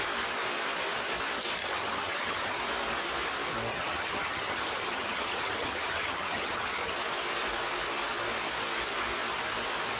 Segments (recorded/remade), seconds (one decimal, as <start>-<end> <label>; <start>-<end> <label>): 0.0-1.6 recorded; 1.6-2.6 remade; 2.6-3.7 recorded; 3.7-6.9 remade; 6.9-10.0 recorded

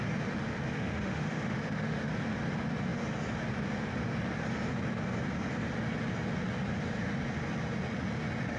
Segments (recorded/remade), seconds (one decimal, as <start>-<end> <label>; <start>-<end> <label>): 0.0-0.7 recorded; 0.7-2.1 remade; 2.1-8.6 recorded